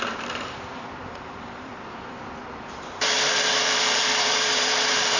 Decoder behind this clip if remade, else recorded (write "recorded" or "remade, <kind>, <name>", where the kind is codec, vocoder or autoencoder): remade, vocoder, BigVGAN v2